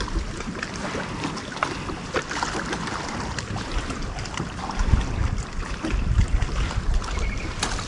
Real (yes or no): yes